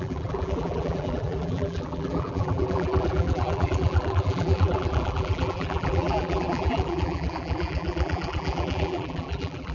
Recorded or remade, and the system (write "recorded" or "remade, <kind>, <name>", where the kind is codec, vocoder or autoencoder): remade, vocoder, BigVGAN v2